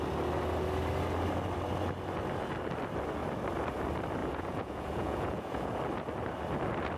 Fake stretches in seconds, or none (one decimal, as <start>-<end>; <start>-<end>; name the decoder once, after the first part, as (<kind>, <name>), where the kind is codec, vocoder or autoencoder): 4.2-5.7 (vocoder, Vocos)